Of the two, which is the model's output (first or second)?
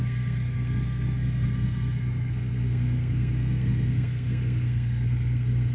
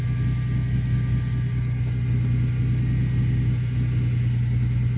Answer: first